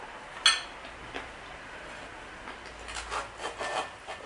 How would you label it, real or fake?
real